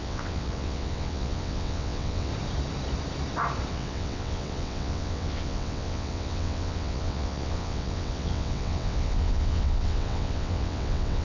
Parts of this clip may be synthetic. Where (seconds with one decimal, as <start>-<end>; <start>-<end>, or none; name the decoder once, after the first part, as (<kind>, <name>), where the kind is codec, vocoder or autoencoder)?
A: 0.0-2.3 (vocoder, WaveNeXt); 3.7-11.2